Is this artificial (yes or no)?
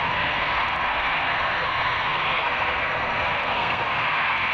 yes